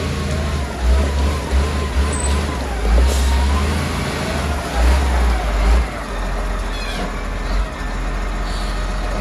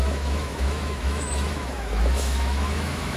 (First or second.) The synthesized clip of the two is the second